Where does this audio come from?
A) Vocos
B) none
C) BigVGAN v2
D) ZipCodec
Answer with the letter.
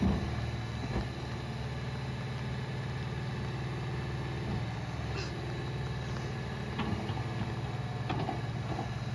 B